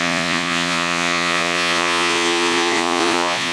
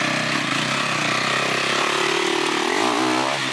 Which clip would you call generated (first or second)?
first